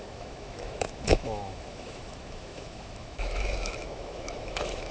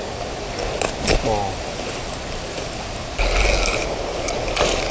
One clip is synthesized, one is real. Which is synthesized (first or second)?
first